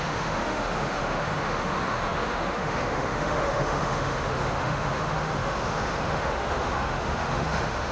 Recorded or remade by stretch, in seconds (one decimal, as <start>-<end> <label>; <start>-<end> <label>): 0.0-7.9 remade